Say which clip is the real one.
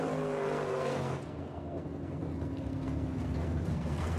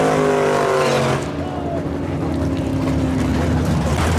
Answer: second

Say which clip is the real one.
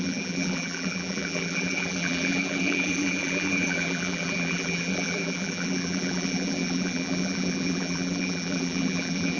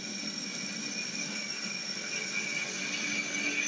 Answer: second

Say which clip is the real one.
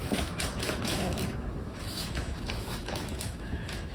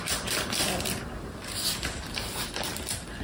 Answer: second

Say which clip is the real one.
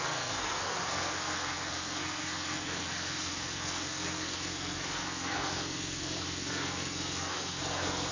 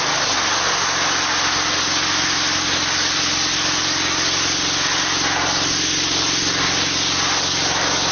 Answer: second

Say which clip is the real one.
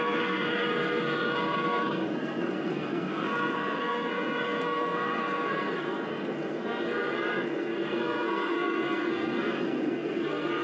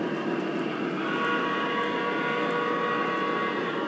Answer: second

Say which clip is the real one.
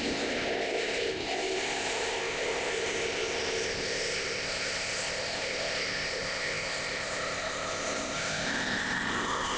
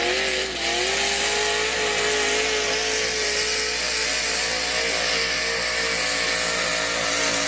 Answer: second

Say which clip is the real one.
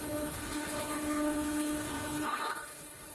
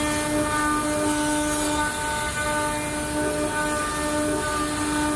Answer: second